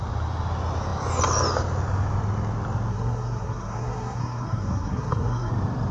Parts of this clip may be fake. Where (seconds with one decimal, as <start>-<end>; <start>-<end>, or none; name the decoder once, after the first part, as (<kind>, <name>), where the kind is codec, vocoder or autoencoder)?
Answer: 2.9-5.5 (codec, SNAC)